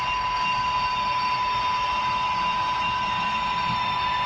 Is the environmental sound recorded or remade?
recorded